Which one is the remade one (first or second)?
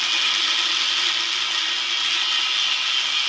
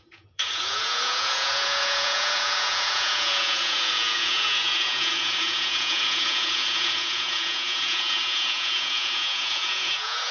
second